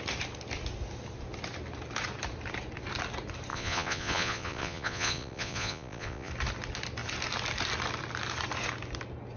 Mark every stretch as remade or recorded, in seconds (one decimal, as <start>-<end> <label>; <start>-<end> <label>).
0.0-3.5 recorded; 3.5-6.3 remade; 6.3-9.4 recorded